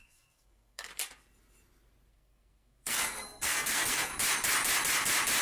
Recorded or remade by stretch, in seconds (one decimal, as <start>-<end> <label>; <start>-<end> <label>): 0.0-0.9 remade; 0.9-2.1 recorded; 2.1-4.1 remade; 4.1-5.4 recorded